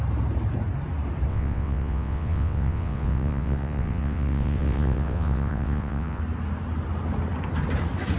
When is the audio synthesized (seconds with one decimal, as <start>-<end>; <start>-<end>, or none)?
1.3-6.2